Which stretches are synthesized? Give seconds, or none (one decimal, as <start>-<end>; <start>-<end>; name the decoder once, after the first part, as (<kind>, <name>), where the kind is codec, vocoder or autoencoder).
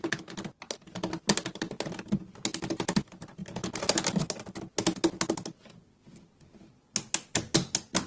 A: none